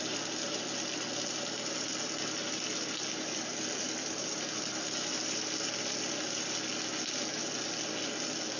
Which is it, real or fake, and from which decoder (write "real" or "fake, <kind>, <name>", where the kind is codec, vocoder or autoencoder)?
real